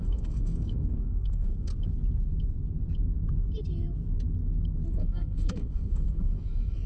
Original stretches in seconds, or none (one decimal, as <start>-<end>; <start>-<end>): 1.7-4.9